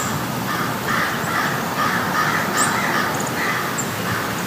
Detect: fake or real real